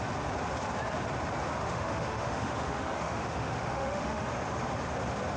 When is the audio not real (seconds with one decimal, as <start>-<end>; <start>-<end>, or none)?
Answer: 1.6-4.3